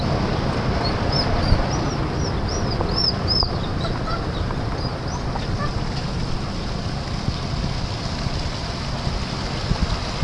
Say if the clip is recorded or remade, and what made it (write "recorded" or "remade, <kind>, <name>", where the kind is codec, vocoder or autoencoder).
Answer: recorded